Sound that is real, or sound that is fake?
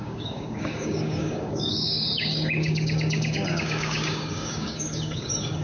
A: fake